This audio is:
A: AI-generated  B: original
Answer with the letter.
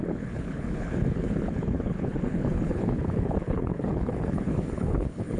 A